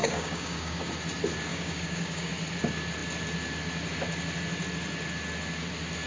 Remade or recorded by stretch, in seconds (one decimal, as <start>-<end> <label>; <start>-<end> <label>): 0.0-0.9 remade; 0.9-1.5 recorded; 1.5-2.3 remade; 2.3-6.1 recorded